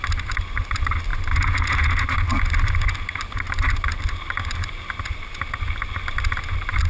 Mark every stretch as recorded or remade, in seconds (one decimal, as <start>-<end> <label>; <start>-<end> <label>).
0.0-6.9 recorded